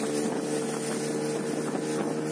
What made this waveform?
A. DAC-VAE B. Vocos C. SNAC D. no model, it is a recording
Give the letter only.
D